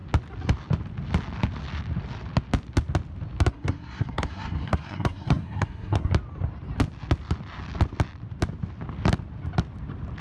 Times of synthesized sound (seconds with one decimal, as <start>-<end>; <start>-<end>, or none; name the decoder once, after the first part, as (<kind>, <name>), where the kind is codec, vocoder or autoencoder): 3.5-6.1 (codec, SNAC)